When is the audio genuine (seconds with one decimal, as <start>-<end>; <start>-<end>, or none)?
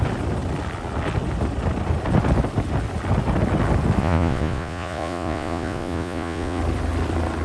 0.0-4.0; 6.6-7.4